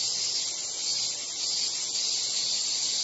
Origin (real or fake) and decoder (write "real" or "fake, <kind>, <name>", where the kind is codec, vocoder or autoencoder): real